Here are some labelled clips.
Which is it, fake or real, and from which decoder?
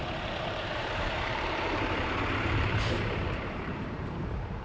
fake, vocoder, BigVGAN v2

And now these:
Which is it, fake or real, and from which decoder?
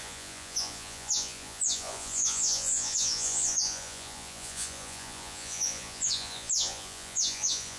fake, vocoder, Vocos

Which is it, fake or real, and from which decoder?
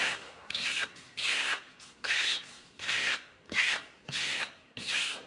fake, codec, SNAC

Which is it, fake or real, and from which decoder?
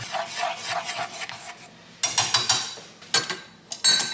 real